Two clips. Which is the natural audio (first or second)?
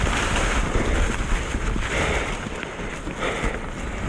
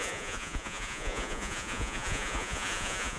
first